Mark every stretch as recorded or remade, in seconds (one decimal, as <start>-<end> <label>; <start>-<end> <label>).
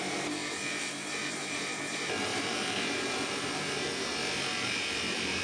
0.0-4.1 remade; 4.1-4.6 recorded; 4.6-5.4 remade